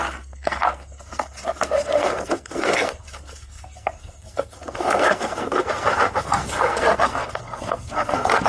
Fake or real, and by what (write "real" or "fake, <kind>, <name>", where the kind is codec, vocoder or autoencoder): fake, codec, SNAC